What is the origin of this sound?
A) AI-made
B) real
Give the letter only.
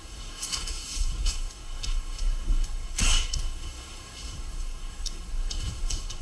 A